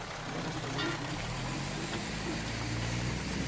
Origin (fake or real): fake